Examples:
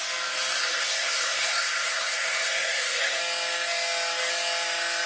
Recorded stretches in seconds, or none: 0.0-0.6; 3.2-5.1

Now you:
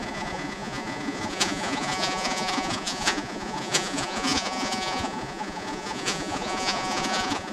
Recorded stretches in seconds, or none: none